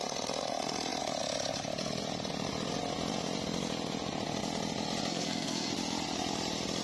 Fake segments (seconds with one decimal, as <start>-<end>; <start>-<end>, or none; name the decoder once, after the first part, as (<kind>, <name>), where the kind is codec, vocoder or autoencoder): 5.1-5.7 (codec, SNAC)

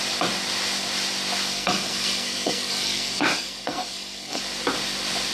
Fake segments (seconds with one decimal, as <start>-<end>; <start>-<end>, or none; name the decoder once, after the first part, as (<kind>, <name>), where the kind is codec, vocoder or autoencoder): 1.5-4.4 (codec, SNAC)

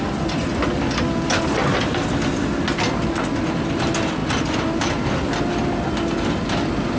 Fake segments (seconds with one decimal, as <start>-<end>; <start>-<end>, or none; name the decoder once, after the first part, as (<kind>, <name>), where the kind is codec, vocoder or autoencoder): none

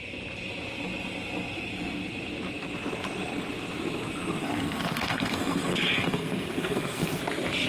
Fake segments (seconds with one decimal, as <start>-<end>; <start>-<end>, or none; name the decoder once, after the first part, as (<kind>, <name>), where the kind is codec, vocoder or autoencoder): 4.4-7.2 (codec, SNAC)

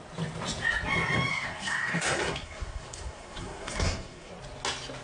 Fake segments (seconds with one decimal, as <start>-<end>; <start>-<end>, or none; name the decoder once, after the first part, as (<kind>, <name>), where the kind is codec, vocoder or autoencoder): 1.3-4.3 (codec, SNAC)

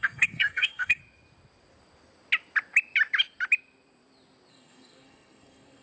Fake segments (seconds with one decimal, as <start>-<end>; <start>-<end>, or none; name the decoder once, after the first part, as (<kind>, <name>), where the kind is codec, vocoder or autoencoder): 0.0-1.0 (codec, SNAC); 4.5-5.8

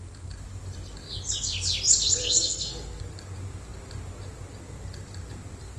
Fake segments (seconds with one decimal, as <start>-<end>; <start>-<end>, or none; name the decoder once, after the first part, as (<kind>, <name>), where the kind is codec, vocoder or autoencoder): 2.2-3.0 (codec, SNAC)

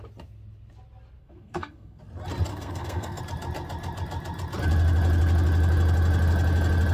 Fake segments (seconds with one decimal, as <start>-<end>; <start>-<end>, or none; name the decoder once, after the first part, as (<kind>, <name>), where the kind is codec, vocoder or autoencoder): 1.2-2.0 (codec, SNAC); 2.5-3.2